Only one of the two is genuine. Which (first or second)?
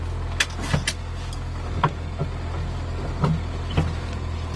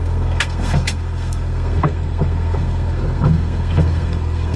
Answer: first